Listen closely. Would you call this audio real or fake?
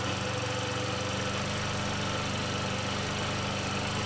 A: real